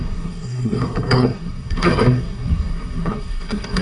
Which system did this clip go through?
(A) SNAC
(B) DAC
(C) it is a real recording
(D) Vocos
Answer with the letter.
A